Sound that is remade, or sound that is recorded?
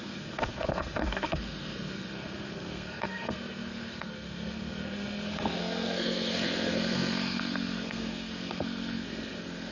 remade